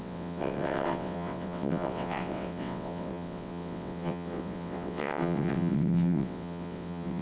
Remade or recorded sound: remade